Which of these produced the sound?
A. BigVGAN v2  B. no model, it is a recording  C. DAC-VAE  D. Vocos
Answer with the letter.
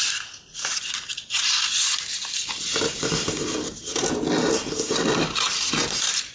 B